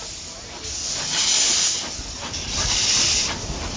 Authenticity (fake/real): real